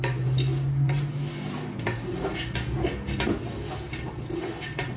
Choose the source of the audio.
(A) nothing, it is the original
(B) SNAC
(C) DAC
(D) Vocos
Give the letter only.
A